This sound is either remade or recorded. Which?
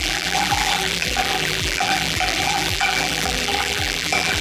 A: remade